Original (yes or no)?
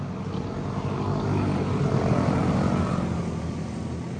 yes